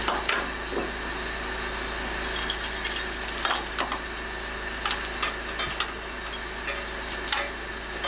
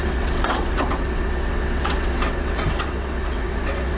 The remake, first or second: second